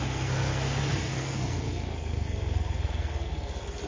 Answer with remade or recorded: remade